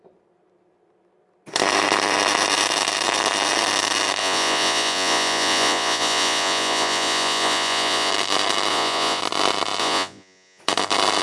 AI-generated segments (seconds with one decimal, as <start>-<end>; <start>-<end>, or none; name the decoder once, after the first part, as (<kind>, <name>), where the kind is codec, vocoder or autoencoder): 4.2-8.1 (vocoder, Vocos); 8.7-9.2; 9.8-10.6